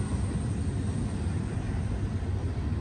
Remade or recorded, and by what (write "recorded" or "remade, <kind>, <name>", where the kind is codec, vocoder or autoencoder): recorded